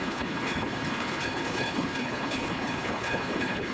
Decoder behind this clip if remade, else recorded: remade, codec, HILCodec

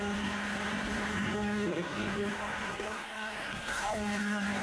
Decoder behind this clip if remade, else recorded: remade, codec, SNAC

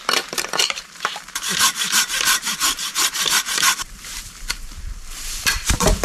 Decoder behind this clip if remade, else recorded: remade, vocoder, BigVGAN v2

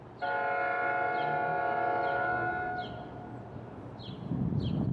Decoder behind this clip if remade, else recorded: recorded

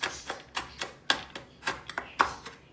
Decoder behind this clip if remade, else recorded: recorded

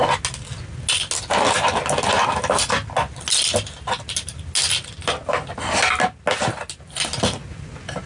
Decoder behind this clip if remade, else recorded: recorded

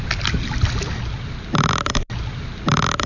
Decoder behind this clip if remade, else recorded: recorded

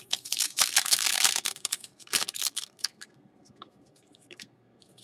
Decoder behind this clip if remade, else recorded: remade, codec, SNAC